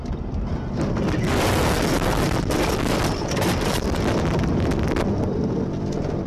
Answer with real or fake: real